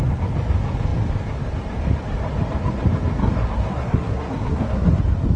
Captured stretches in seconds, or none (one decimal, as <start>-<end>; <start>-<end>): 0.0-3.2; 5.0-5.4